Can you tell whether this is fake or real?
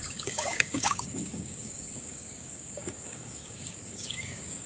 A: fake